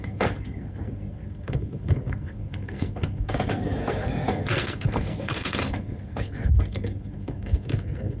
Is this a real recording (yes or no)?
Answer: no